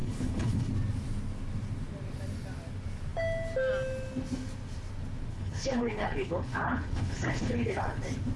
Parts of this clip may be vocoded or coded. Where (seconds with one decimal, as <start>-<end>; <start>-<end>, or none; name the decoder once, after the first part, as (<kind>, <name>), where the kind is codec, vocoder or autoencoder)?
0.0-0.7 (codec, HILCodec); 5.3-8.0